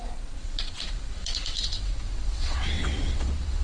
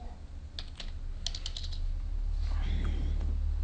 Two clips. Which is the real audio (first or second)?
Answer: second